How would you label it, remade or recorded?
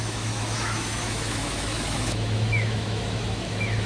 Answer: remade